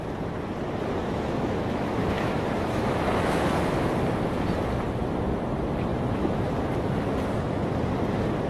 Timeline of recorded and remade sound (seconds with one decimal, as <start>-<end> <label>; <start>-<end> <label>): 0.0-1.0 recorded; 1.0-3.9 remade; 3.9-5.9 recorded; 5.9-6.5 remade; 6.5-8.5 recorded